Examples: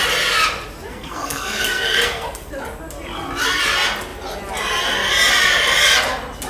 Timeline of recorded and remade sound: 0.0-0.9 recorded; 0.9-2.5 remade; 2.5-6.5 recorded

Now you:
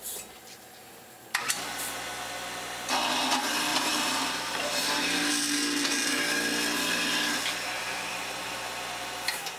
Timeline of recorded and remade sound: 0.0-3.7 recorded; 3.7-5.3 remade; 5.3-7.8 recorded; 7.8-8.5 remade; 8.5-9.6 recorded

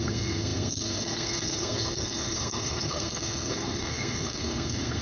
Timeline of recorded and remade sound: 0.0-5.0 remade

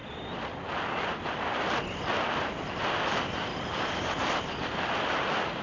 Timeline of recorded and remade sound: 0.0-3.4 recorded; 3.4-5.6 remade

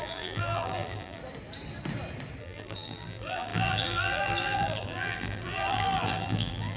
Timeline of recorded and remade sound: 0.0-1.2 remade; 1.2-2.4 recorded; 2.4-6.8 remade

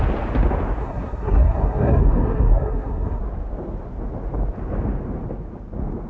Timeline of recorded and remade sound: 0.0-0.8 recorded; 0.8-3.2 remade; 3.2-6.1 recorded

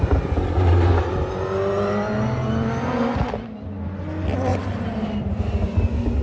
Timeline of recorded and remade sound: 0.0-4.5 recorded; 4.5-5.3 remade; 5.3-6.2 recorded

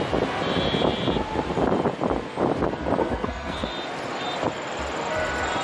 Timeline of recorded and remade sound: 0.0-3.0 recorded; 3.0-3.7 remade; 3.7-5.6 recorded